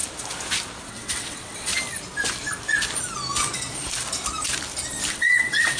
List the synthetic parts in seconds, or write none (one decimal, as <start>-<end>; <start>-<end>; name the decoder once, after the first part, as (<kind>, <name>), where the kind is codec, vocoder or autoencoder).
0.9-1.7 (vocoder, WaveNeXt); 5.1-5.8